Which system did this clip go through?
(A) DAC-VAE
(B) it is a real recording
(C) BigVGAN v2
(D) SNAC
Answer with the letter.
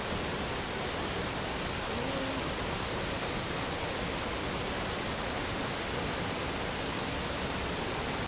B